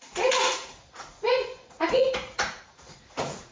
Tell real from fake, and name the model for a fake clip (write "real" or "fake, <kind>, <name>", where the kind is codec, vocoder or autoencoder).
fake, vocoder, Vocos